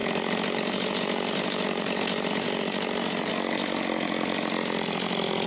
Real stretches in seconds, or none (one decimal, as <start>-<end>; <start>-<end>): 3.3-5.5